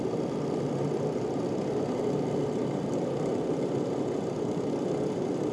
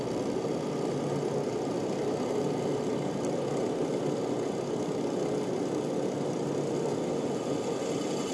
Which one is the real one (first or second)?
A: second